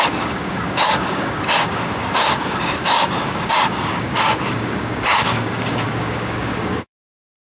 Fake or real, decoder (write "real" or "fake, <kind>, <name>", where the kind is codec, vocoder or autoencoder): fake, codec, DAC